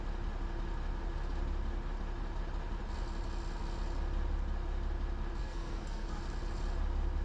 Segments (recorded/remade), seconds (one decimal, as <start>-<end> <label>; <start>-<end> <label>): 0.0-5.4 recorded; 5.4-6.2 remade; 6.2-7.2 recorded